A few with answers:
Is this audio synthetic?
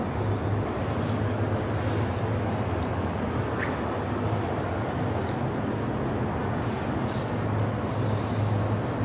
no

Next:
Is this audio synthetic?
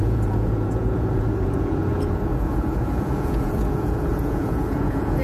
yes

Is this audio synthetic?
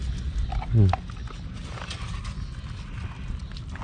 no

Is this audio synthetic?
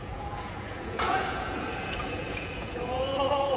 yes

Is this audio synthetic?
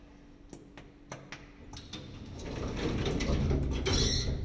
no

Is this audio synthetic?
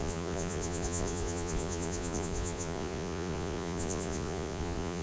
yes